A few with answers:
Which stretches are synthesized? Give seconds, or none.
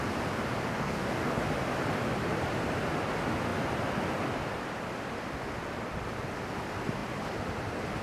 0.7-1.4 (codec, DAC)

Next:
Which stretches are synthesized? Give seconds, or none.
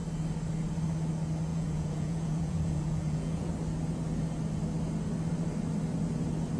1.5-3.5 (vocoder, Vocos)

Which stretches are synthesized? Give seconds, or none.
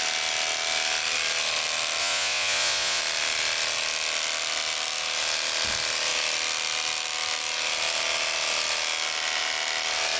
2.0-3.0 (vocoder, Vocos)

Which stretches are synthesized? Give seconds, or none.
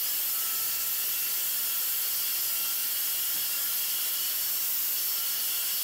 none